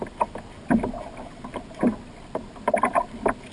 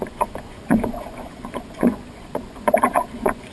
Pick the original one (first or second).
first